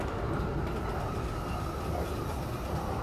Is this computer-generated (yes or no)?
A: no